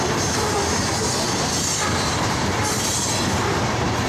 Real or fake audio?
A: real